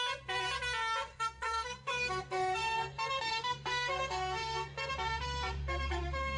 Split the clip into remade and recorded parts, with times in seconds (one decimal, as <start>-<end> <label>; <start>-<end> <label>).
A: 0.0-1.1 recorded; 1.1-4.9 remade; 4.9-5.6 recorded; 5.6-6.4 remade